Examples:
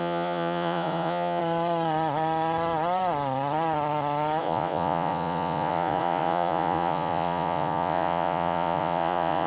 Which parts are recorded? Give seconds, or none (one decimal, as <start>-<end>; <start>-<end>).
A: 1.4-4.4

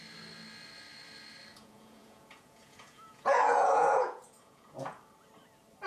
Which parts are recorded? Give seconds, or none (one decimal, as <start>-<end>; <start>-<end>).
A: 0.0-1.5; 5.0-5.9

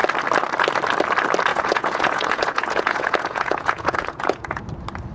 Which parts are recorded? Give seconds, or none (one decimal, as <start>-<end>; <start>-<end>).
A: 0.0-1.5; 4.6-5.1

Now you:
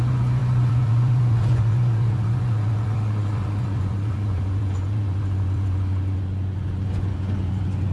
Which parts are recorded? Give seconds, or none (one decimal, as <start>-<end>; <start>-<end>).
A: none

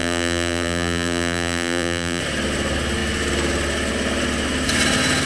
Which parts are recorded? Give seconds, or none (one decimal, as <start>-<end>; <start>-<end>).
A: 2.2-5.3

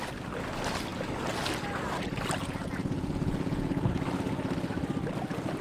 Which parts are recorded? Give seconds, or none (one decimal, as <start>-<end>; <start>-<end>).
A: 0.0-2.4; 3.9-5.6

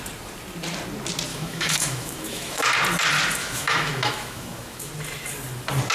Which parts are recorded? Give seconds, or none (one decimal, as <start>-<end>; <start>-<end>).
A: 0.0-1.3; 2.6-3.4; 4.9-5.9

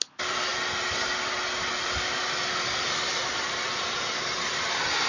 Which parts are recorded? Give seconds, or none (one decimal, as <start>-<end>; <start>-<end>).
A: 0.0-5.1